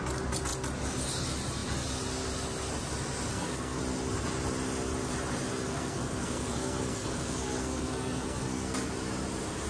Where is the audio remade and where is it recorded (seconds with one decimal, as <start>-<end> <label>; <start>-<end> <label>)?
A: 0.0-3.3 recorded; 3.3-3.8 remade; 3.8-5.5 recorded; 5.5-8.9 remade; 8.9-9.7 recorded

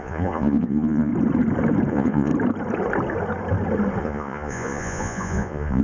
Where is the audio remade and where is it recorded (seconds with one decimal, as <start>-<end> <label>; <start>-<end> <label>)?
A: 0.0-1.1 remade; 1.1-1.9 recorded; 1.9-2.3 remade; 2.3-4.0 recorded; 4.0-5.8 remade